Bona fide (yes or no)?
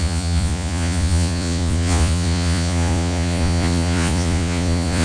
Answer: no